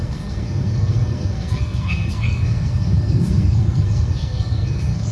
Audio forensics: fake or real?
fake